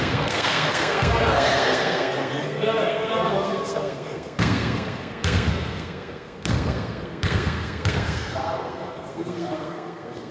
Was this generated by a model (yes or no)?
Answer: yes